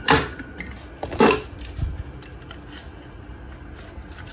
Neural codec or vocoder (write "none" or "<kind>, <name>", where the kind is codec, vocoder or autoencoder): none